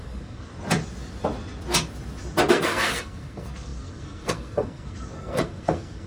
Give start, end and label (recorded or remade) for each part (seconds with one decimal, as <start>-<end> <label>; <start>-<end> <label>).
0.0-0.5 remade; 0.5-2.5 recorded; 2.5-6.1 remade

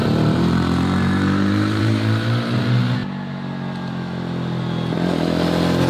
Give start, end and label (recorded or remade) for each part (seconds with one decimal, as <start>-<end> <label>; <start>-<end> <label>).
0.0-2.6 remade; 2.6-5.9 recorded

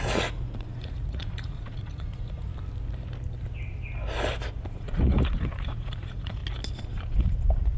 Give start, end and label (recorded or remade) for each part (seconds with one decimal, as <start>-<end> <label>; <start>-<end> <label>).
0.0-2.5 remade; 2.5-4.7 recorded; 4.7-6.4 remade; 6.4-7.0 recorded; 7.0-7.8 remade

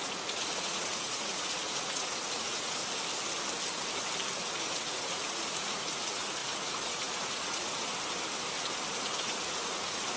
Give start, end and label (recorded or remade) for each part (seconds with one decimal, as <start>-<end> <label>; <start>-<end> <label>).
0.0-2.8 remade; 2.8-4.6 recorded; 4.6-7.9 remade; 7.9-8.9 recorded; 8.9-10.2 remade

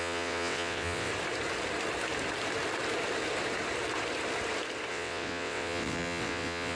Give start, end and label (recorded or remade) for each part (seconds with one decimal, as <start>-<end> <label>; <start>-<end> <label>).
0.0-1.1 remade; 1.1-4.9 recorded; 4.9-6.8 remade

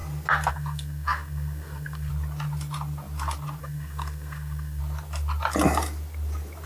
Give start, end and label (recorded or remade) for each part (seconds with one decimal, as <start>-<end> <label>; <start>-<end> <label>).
0.0-0.5 recorded; 0.5-2.1 remade; 2.1-3.6 recorded; 3.6-4.8 remade; 4.8-6.7 recorded